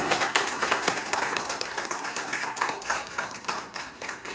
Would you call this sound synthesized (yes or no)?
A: yes